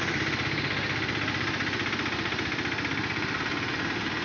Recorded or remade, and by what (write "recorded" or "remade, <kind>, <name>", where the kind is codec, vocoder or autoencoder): remade, vocoder, BigVGAN v2